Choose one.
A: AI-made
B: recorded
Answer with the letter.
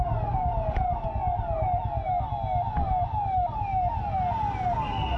B